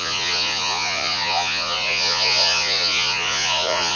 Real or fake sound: fake